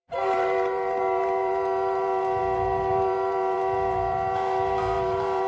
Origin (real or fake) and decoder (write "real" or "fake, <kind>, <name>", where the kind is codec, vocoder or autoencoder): fake, vocoder, BigVGAN v2